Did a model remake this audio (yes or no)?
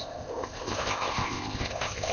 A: yes